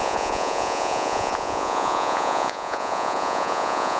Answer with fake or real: fake